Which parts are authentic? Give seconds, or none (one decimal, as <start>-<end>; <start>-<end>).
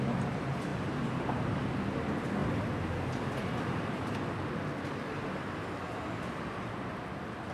0.0-0.7; 1.7-7.5